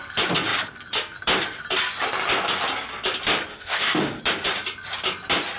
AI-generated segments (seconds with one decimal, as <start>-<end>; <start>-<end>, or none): 3.5-4.2